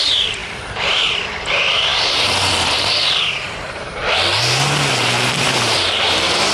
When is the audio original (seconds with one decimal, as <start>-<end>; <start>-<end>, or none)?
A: 4.0-4.9